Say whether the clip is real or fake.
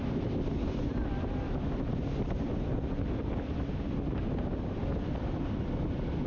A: fake